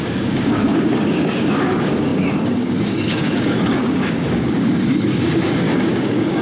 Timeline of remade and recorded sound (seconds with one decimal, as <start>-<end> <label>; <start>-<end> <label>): 0.0-6.4 remade